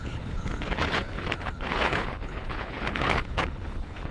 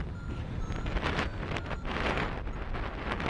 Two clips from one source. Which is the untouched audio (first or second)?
second